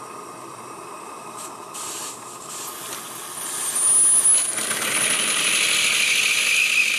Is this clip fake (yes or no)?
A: no